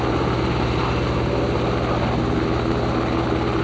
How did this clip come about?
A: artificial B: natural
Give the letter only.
B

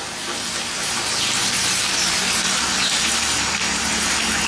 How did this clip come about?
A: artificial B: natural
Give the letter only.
A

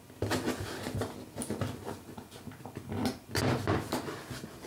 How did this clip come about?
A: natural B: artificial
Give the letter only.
A